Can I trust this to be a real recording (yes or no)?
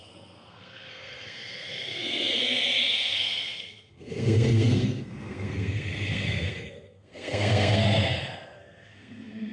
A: no